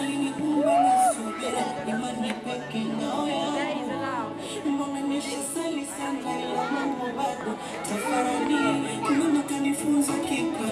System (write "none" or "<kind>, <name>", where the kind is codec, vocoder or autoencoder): vocoder, Vocos